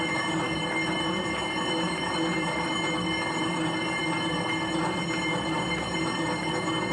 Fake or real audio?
real